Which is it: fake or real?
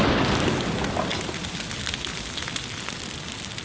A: real